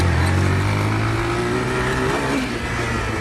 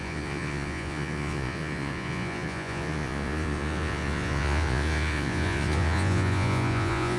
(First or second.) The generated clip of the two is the second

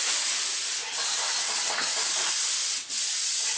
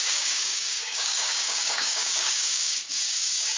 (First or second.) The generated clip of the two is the second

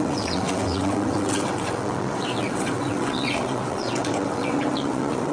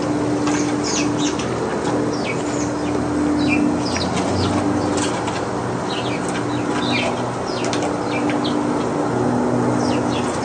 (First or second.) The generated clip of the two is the first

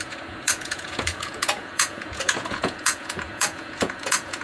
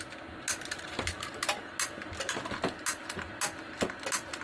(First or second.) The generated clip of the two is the first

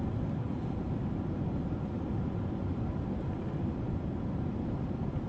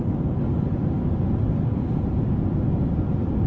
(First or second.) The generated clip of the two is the first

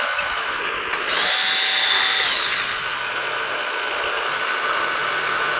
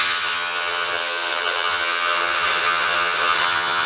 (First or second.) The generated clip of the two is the second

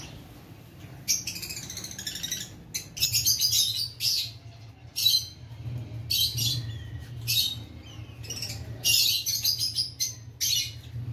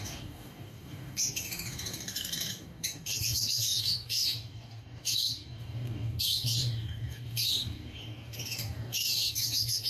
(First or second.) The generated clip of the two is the second